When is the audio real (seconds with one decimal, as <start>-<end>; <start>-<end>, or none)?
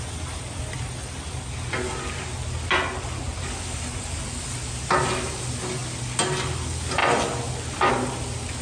0.0-8.6